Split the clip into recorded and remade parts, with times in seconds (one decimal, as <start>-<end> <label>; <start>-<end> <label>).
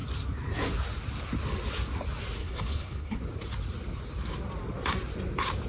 0.0-2.4 recorded; 2.4-3.2 remade; 3.2-5.7 recorded